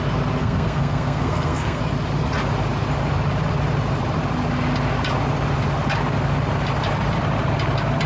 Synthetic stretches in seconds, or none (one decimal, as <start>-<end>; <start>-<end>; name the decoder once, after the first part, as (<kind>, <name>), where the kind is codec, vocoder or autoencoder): 0.4-1.8 (codec, SNAC)